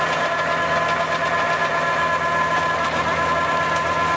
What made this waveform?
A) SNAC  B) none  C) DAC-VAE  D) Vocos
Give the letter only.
B